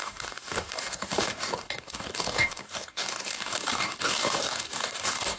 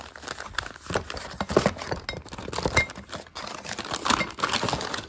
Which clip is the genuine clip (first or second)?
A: second